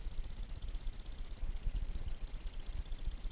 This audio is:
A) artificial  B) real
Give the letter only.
B